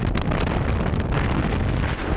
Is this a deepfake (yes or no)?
no